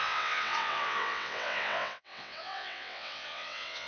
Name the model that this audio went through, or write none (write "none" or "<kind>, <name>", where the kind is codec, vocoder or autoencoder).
vocoder, WaveNeXt